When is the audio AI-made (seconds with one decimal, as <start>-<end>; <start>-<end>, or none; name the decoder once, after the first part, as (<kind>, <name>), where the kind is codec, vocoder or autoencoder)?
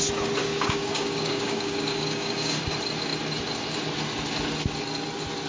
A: 0.4-2.6 (codec, DAC)